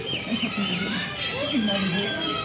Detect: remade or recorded recorded